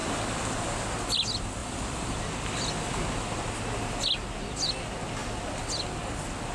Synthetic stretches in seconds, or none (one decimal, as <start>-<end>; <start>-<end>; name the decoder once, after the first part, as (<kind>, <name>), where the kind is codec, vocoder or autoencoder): 0.0-0.6 (vocoder, BigVGAN v2); 1.6-3.4